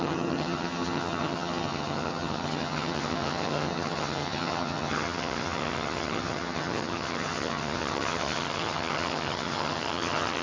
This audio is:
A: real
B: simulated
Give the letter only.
B